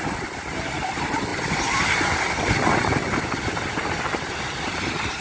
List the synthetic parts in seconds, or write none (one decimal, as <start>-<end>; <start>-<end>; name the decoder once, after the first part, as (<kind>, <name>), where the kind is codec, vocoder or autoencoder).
none